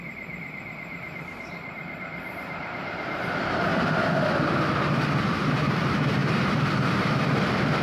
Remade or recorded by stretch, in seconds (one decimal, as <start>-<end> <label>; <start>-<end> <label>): 0.0-3.7 remade; 3.7-5.6 recorded; 5.6-7.8 remade